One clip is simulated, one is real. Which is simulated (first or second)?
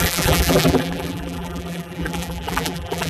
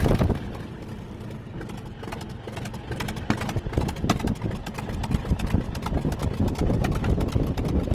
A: first